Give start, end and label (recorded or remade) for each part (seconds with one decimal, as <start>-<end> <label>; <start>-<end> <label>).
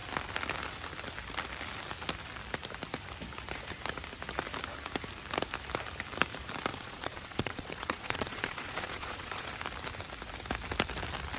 0.0-6.7 recorded; 6.7-9.5 remade; 9.5-11.4 recorded